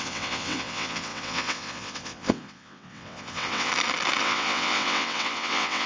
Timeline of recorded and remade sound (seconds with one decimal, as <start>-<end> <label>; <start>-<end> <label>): 0.0-3.7 remade; 3.7-4.2 recorded; 4.2-5.9 remade